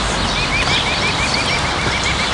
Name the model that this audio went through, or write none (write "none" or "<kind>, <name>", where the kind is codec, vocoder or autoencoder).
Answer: none